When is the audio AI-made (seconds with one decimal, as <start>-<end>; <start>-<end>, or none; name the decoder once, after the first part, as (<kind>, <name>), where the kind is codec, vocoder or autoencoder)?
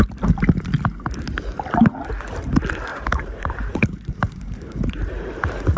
2.9-5.8 (vocoder, BigVGAN v2)